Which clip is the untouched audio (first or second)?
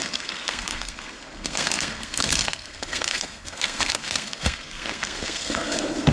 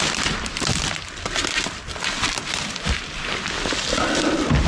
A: second